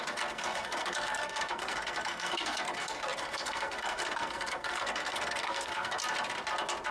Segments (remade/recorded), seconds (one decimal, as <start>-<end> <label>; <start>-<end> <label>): 0.0-6.0 remade; 6.0-6.9 recorded